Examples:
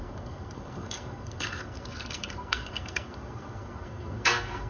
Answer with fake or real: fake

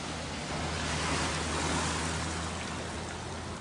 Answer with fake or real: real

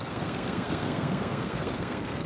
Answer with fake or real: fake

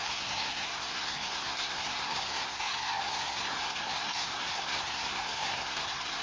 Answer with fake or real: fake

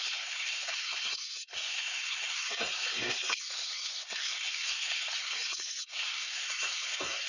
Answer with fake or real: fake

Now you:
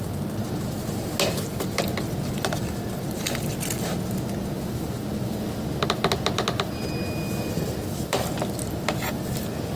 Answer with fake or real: real